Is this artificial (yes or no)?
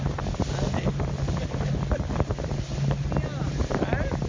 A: no